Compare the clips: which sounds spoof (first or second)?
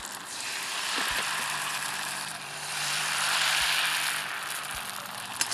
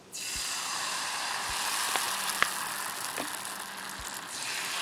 first